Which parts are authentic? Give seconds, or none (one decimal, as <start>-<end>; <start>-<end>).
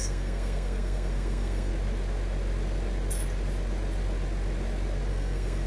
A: 1.7-5.1